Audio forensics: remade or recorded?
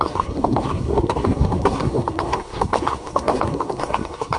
remade